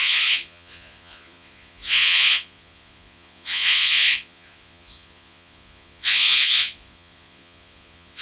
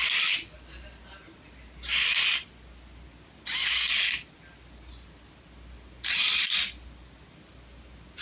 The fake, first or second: first